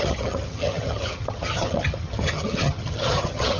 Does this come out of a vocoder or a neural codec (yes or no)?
yes